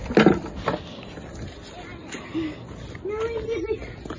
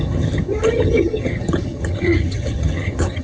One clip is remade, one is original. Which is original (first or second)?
first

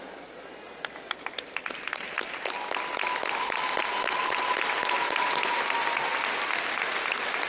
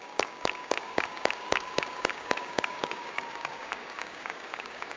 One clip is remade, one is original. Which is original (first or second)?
first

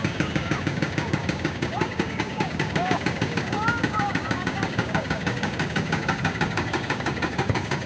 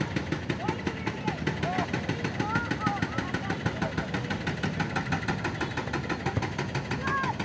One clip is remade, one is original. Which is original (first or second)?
second